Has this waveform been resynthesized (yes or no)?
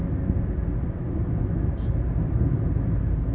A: no